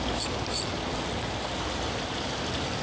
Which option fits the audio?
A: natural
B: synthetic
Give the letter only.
A